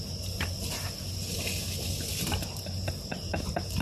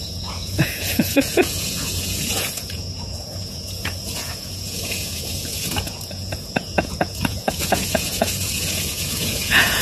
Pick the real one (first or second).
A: first